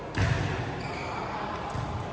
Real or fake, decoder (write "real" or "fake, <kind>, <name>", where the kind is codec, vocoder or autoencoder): real